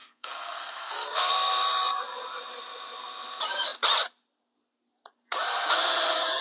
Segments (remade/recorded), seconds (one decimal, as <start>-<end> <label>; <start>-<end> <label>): 0.0-1.3 remade; 1.3-6.4 recorded